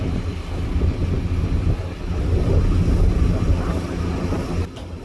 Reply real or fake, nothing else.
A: real